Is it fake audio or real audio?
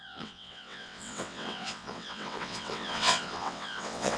fake